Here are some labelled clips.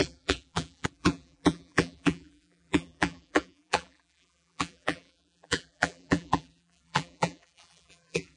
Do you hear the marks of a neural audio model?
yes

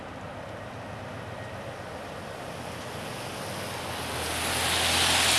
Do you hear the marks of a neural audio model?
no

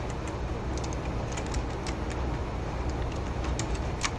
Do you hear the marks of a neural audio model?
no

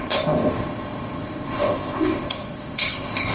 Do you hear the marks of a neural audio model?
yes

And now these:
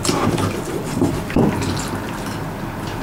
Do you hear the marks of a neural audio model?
no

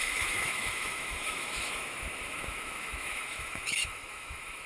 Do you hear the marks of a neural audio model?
yes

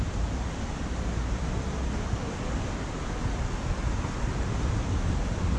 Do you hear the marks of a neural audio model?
no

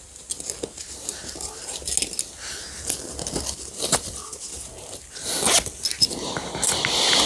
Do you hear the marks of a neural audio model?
no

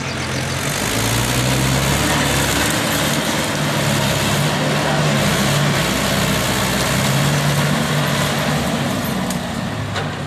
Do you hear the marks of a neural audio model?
no